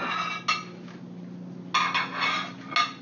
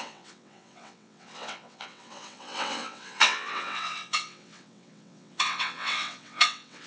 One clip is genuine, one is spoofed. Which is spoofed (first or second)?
second